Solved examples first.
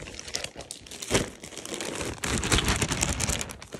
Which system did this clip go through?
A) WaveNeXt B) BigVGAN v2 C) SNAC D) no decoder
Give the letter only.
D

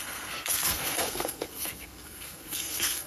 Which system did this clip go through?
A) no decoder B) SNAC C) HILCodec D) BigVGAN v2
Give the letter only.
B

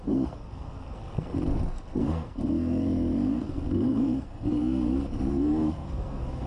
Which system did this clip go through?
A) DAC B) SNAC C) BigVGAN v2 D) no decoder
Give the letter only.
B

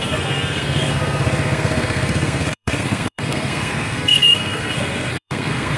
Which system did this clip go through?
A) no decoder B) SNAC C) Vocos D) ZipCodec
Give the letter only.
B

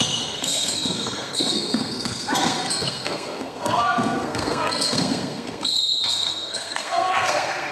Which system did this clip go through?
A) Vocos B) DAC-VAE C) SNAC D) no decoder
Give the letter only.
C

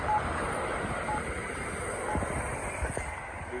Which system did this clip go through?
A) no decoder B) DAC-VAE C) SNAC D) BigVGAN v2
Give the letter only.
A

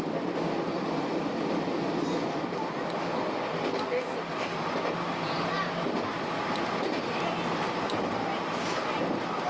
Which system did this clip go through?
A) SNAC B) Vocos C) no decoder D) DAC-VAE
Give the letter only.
C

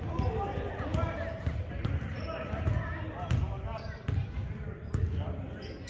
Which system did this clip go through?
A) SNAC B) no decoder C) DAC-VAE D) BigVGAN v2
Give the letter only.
B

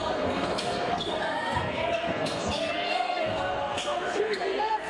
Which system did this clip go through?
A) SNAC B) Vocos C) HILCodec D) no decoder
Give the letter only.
A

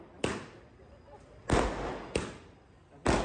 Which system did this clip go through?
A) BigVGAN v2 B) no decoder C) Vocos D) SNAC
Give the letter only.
B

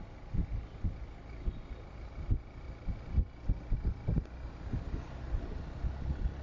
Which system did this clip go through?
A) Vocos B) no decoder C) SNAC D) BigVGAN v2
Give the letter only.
B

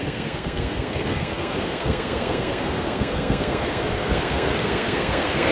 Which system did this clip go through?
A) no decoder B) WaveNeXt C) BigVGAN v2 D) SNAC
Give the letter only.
D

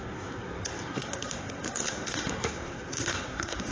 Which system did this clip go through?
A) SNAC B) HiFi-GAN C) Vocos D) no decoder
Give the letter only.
A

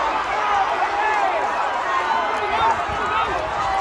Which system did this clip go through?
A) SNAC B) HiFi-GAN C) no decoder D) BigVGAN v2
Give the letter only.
C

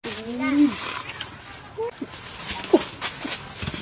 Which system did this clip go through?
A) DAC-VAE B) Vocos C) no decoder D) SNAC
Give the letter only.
C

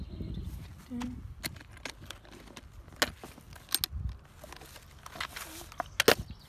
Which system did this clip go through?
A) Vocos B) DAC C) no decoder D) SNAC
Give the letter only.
C